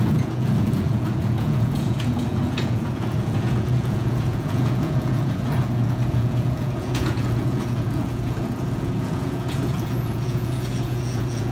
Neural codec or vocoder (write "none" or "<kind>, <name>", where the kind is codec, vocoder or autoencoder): vocoder, Vocos